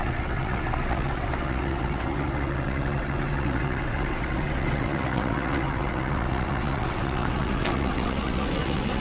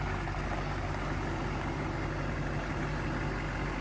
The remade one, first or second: first